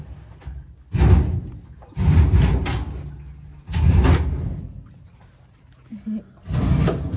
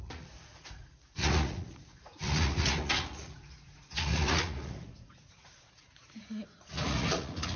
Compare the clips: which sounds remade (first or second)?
second